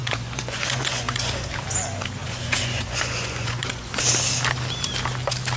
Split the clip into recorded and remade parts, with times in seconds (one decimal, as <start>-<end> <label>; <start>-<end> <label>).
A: 0.0-1.5 remade; 1.5-2.2 recorded; 2.2-4.0 remade; 4.0-5.6 recorded